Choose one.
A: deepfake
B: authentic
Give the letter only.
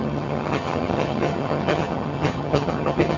A